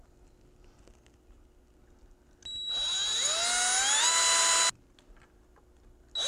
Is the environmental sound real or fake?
real